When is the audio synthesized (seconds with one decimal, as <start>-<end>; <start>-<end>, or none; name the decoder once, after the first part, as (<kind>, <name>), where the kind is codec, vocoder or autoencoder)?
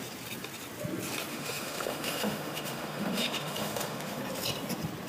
1.3-4.2 (autoencoder, DAC-VAE)